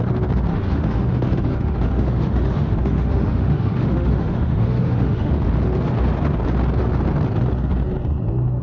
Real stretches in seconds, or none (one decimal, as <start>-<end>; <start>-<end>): 0.0-0.5; 5.3-8.6